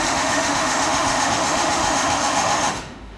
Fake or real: fake